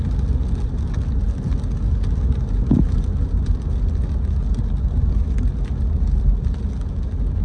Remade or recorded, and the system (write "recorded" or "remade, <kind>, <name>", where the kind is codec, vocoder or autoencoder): recorded